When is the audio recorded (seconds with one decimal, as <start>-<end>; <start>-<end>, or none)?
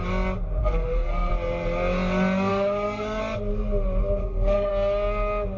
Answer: 0.0-0.6; 1.3-2.5; 3.2-4.2; 4.7-5.6